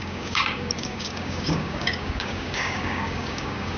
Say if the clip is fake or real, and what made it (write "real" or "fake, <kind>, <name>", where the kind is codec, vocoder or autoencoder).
fake, codec, DAC